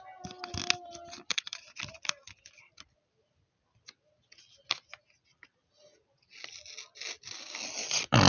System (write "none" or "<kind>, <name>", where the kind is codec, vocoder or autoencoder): none